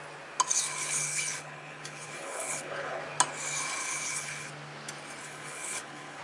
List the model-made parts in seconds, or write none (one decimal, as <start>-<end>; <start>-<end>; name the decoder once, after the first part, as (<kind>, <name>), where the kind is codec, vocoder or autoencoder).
0.7-3.0 (codec, HILCodec); 3.8-4.5; 5.2-6.2